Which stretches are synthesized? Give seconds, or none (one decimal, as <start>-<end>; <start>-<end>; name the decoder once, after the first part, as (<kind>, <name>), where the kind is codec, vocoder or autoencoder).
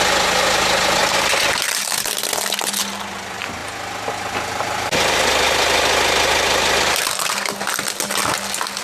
none